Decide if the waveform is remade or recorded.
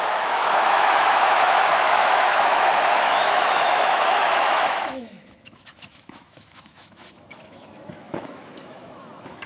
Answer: remade